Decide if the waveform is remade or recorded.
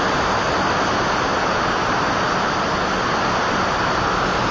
recorded